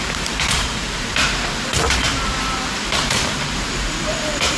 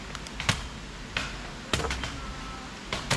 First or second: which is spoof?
first